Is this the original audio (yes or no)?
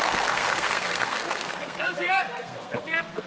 no